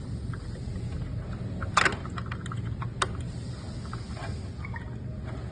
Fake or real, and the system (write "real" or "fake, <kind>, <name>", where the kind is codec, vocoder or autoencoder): real